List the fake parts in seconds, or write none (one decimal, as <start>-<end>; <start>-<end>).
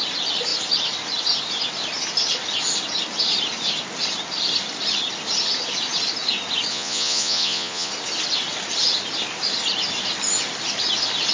6.7-7.9